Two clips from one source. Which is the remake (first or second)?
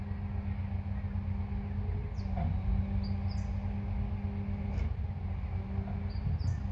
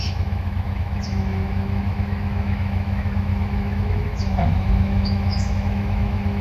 second